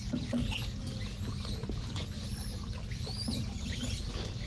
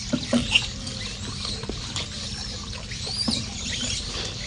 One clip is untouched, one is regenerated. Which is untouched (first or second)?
first